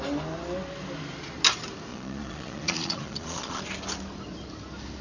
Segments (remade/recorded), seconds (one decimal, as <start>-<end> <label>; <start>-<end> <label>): 0.0-1.9 recorded; 1.9-3.6 remade; 3.6-5.0 recorded